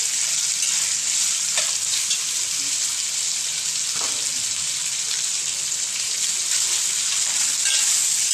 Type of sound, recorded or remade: recorded